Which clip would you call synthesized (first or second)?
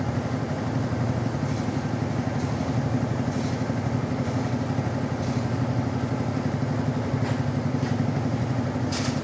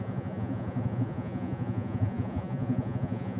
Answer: second